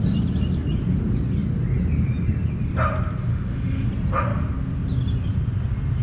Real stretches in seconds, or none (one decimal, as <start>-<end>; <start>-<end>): 0.0-3.3; 3.9-6.0